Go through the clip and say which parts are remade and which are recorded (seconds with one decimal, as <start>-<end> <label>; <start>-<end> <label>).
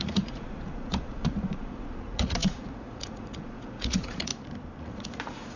0.0-4.3 remade; 4.3-4.8 recorded; 4.8-5.6 remade